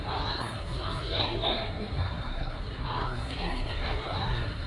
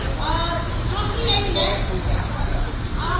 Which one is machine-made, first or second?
first